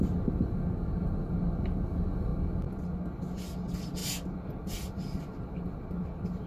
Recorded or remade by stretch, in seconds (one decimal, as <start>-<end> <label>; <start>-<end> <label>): 0.0-6.5 recorded